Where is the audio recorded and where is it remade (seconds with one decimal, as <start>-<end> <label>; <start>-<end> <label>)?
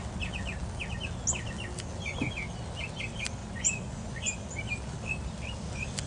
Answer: 0.0-3.4 recorded; 3.4-4.4 remade; 4.4-6.1 recorded